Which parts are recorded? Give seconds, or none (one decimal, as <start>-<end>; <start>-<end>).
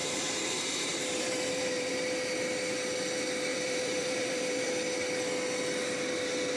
1.9-3.5; 4.7-6.6